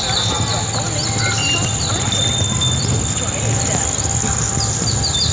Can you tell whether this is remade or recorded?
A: recorded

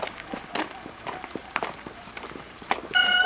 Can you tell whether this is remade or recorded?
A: recorded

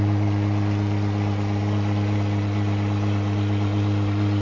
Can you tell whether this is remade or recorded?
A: recorded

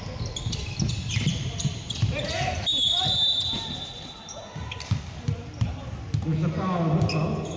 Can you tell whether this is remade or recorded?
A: recorded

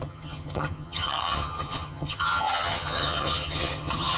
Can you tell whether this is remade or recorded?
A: remade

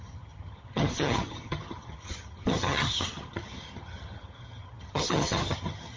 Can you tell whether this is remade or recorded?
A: remade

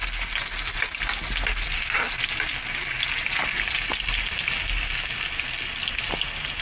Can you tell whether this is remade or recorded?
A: recorded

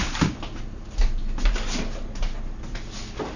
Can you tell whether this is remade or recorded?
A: recorded